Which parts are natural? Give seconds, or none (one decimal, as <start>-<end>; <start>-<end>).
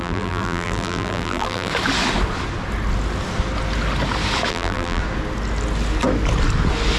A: 1.7-4.5; 5.0-7.0